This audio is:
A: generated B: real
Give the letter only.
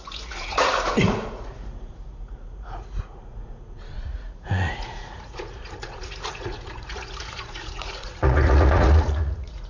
A